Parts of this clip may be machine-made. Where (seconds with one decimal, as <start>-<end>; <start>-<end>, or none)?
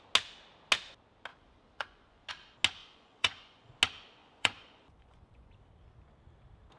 1.3-2.3; 2.8-3.7; 4.2-5.5